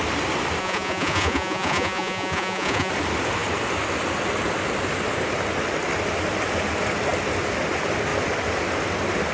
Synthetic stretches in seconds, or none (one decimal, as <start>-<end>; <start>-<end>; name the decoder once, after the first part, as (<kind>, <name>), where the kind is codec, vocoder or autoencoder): 0.6-2.9 (vocoder, Vocos)